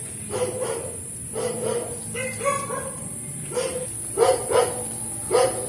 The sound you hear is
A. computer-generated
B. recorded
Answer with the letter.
B